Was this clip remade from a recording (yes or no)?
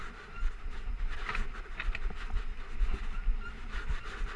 no